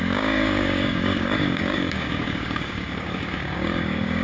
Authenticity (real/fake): fake